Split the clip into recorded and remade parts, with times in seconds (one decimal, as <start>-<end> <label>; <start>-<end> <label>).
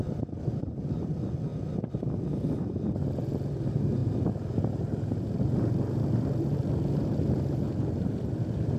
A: 0.0-8.8 recorded